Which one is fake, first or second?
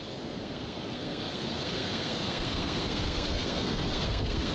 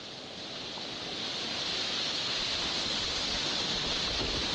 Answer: first